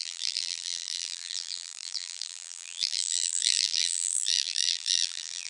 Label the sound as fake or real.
fake